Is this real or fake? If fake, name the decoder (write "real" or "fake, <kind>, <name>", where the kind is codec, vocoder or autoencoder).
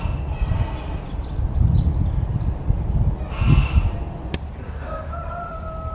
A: real